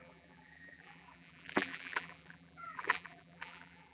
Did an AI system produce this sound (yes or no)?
yes